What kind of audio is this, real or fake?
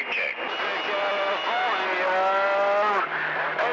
real